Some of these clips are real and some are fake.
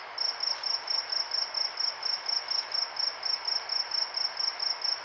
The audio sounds real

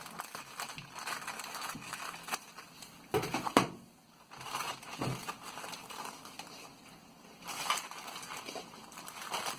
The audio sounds real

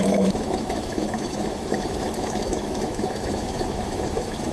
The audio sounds fake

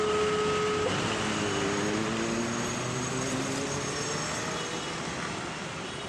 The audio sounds real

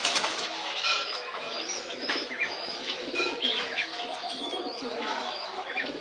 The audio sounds fake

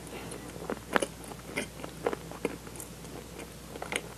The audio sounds real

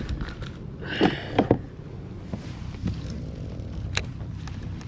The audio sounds real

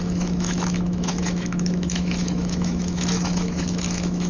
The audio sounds fake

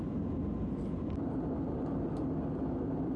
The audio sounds real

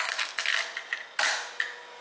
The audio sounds real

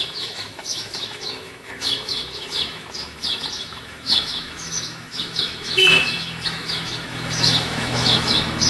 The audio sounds fake